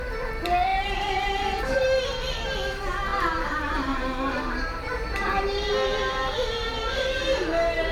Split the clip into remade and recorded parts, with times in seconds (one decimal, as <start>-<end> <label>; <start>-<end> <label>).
0.0-0.7 recorded; 0.7-2.1 remade; 2.1-3.1 recorded; 3.1-5.7 remade; 5.7-7.9 recorded